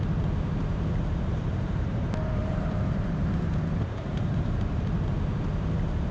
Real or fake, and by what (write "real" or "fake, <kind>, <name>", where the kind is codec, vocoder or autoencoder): fake, vocoder, BigVGAN v2